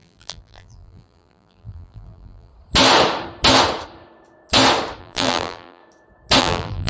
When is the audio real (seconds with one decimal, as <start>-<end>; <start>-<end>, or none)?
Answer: 2.5-5.0; 5.8-6.4